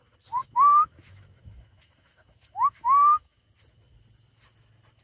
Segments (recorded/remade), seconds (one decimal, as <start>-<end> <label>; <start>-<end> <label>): 0.0-0.4 recorded; 0.4-3.4 remade; 3.4-5.0 recorded